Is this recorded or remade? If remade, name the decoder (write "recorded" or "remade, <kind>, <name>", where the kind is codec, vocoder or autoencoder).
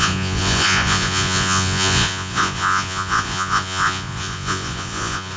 remade, vocoder, Vocos